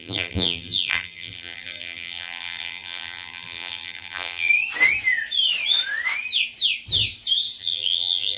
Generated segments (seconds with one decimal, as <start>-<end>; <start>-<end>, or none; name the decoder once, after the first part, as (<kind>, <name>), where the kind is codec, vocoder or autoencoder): 0.0-4.5 (vocoder, BigVGAN v2); 7.6-8.4